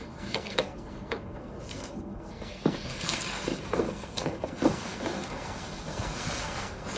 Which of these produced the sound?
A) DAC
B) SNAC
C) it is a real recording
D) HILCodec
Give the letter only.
B